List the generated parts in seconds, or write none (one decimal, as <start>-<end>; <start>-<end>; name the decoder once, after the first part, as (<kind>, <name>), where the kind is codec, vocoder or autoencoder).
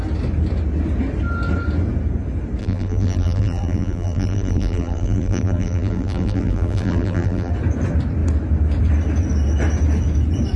2.6-7.5 (vocoder, BigVGAN v2)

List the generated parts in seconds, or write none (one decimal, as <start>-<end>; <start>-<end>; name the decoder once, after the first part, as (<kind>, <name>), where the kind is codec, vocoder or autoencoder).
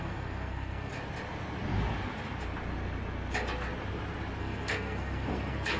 0.0-0.9 (codec, SNAC); 4.4-5.8